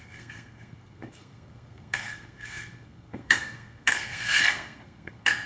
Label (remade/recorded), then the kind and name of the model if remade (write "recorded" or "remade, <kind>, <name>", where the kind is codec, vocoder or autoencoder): remade, codec, SNAC